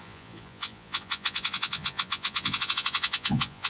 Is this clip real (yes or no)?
no